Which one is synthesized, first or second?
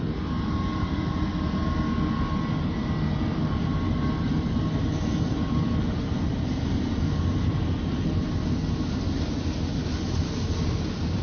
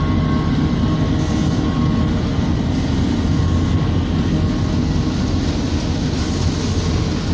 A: first